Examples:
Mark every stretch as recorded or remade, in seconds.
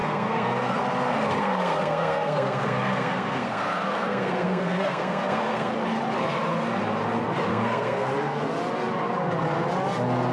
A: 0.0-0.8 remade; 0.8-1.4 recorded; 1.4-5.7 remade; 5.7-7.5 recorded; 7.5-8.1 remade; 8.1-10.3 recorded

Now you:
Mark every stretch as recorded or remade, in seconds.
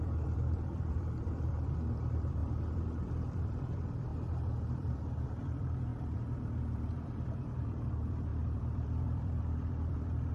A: 0.0-4.1 remade; 4.1-4.7 recorded; 4.7-5.9 remade; 5.9-6.7 recorded; 6.7-10.3 remade